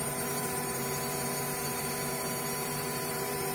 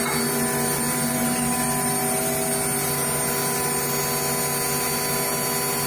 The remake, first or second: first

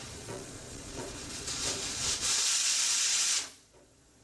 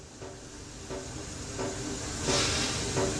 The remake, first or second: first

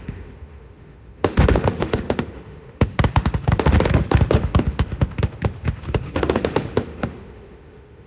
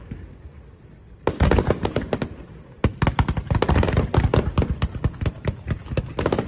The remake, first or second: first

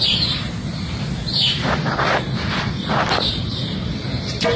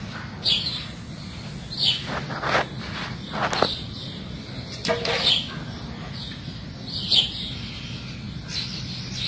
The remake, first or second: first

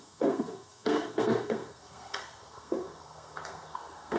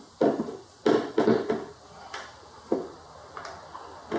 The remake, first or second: first